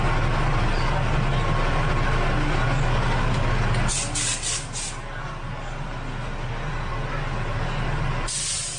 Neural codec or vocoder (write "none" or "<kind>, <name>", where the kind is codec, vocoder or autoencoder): none